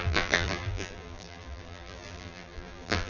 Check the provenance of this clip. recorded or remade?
remade